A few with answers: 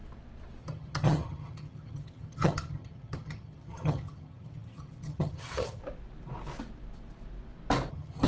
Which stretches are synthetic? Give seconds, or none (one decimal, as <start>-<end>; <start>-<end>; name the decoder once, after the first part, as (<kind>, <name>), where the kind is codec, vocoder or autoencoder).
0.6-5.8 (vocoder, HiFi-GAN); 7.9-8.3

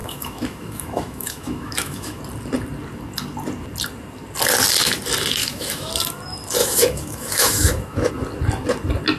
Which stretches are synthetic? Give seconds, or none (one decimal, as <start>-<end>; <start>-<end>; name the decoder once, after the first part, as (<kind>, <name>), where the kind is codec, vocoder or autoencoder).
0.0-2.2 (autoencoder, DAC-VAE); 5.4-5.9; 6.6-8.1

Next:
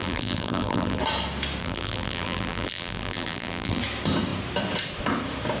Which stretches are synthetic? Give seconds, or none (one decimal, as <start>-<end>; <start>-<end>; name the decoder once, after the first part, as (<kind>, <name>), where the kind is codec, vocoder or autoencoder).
0.0-1.0 (vocoder, BigVGAN v2); 1.6-3.8

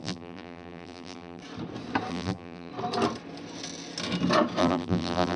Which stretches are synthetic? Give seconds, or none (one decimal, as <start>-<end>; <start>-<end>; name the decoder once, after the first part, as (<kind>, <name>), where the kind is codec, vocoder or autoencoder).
0.0-1.4 (vocoder, BigVGAN v2); 2.1-2.7; 4.6-5.4

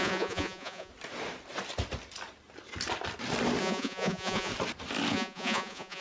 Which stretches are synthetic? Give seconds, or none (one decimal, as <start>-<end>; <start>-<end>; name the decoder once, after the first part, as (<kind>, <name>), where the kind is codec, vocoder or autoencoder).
0.0-0.9 (vocoder, Vocos); 3.6-4.5; 5.1-6.0

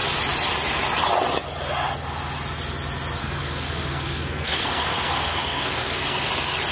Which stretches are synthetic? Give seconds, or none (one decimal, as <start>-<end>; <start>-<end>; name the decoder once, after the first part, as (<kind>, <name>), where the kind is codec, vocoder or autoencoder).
3.2-6.3 (codec, SNAC)